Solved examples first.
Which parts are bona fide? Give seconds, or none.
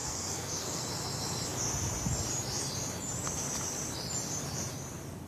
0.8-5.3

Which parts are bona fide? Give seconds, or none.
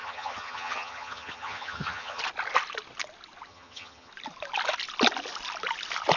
2.2-3.5; 4.1-6.2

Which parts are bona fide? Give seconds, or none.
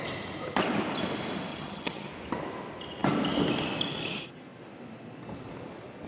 0.0-1.5; 2.1-6.1